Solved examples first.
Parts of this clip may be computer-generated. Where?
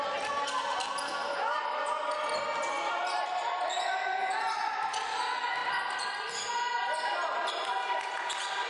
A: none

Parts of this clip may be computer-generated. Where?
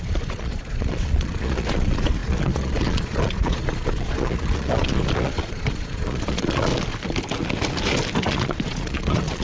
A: 0.0-6.7 (vocoder, Vocos); 8.2-9.4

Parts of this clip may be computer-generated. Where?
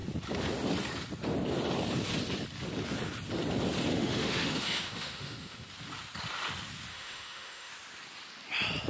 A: 3.9-5.7 (autoencoder, DAC-VAE); 6.9-7.7